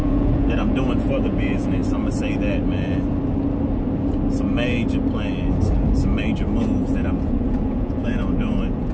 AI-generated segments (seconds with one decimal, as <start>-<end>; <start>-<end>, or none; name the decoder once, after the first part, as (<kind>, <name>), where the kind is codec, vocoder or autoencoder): 0.0-1.8 (vocoder, Vocos); 6.6-8.9